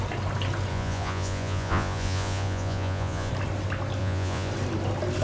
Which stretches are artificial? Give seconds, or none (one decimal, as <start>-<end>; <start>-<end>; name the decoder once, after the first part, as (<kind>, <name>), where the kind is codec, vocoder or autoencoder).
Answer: 0.7-3.3 (vocoder, Vocos); 4.0-4.5